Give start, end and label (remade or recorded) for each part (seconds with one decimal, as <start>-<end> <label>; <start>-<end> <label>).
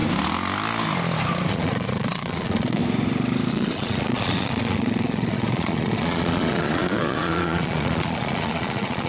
0.0-1.5 recorded; 1.5-2.8 remade; 2.8-3.5 recorded; 3.5-9.1 remade